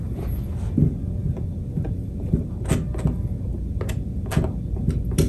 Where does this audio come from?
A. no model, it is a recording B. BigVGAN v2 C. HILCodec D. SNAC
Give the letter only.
A